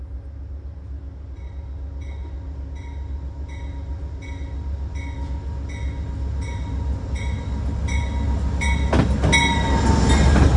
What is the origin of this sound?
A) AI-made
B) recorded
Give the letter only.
B